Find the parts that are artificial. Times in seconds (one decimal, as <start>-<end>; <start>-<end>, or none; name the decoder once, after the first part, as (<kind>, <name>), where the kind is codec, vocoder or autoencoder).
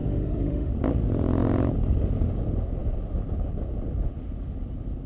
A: 0.0-0.7 (autoencoder, DAC-VAE)